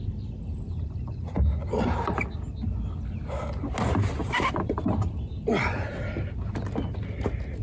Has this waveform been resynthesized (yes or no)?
no